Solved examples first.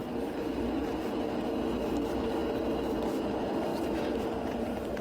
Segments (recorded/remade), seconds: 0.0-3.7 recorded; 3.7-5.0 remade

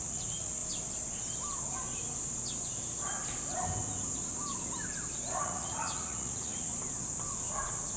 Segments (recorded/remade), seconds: 0.0-0.6 remade; 0.6-5.4 recorded; 5.4-6.7 remade; 6.7-7.5 recorded; 7.5-8.0 remade

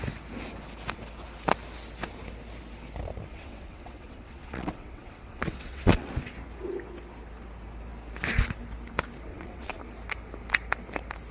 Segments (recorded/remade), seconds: 0.0-3.3 recorded; 3.3-6.1 remade; 6.1-9.3 recorded; 9.3-9.8 remade; 9.8-11.3 recorded

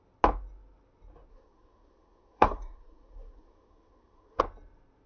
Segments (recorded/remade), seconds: 0.0-1.3 recorded; 1.3-4.4 remade; 4.4-5.1 recorded